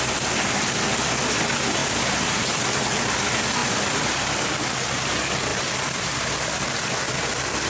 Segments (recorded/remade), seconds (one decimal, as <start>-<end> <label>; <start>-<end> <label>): 0.0-1.8 recorded; 1.8-2.4 remade; 2.4-3.6 recorded; 3.6-4.2 remade; 4.2-5.5 recorded; 5.5-6.8 remade; 6.8-7.7 recorded